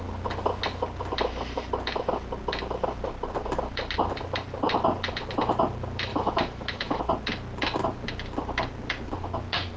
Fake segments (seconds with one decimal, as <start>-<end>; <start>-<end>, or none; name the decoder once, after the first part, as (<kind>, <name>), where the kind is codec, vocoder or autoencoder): 6.1-7.0 (autoencoder, DAC-VAE)